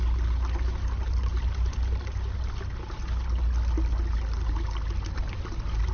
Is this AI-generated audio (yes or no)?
no